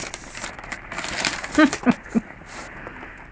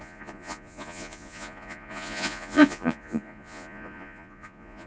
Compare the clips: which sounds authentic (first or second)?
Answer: first